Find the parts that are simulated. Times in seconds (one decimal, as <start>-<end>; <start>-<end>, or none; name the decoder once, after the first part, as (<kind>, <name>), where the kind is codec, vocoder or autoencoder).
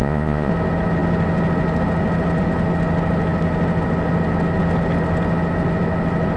0.0-0.5 (vocoder, Vocos)